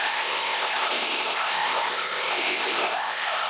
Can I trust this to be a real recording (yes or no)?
no